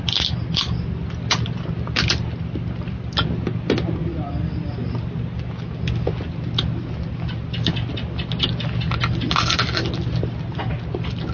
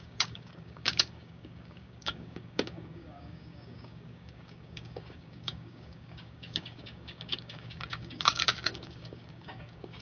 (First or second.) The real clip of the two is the first